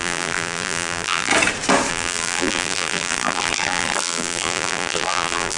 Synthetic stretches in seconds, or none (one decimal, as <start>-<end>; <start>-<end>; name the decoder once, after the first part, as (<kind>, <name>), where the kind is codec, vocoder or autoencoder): 0.0-1.3 (vocoder, BigVGAN v2); 1.9-5.6